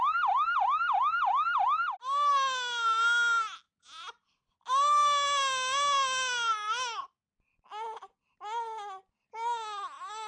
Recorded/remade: recorded